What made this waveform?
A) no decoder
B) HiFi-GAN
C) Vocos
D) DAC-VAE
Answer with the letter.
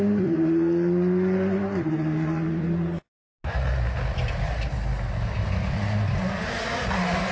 A